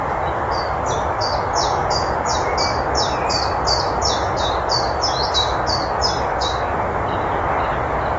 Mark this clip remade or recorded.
recorded